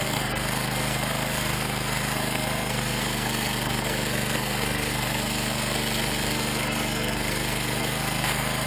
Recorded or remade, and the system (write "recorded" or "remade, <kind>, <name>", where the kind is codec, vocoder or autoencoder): remade, codec, SNAC